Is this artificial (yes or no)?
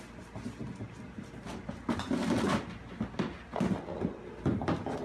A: no